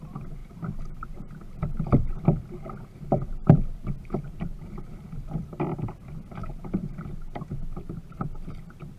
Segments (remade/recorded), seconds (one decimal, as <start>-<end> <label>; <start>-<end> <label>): 0.0-3.8 recorded; 3.8-5.7 remade; 5.7-6.4 recorded; 6.4-7.0 remade; 7.0-9.0 recorded